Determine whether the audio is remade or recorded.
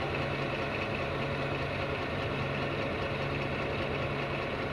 recorded